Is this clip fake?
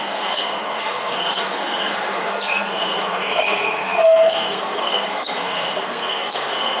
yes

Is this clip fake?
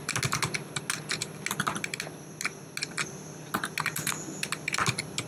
no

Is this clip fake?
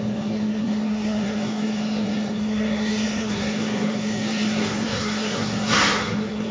yes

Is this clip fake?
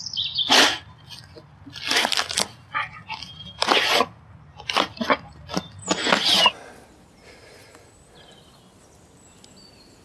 no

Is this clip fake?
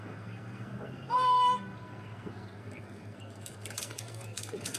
yes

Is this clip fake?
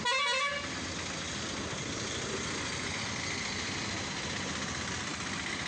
no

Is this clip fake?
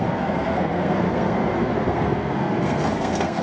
yes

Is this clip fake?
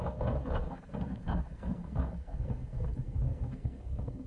yes